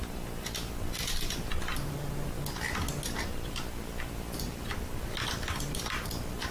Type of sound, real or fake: real